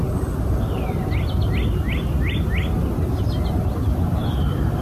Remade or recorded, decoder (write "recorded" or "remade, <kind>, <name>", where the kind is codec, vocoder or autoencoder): recorded